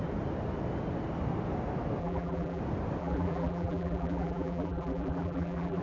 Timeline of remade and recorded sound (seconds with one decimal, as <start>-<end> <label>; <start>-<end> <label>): 0.0-2.0 recorded; 2.0-2.6 remade; 2.6-3.0 recorded; 3.0-5.8 remade